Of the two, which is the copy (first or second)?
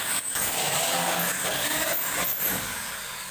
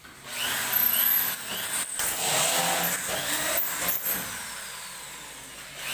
first